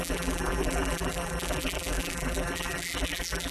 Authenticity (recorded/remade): remade